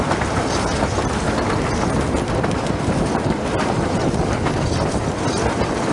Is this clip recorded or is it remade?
recorded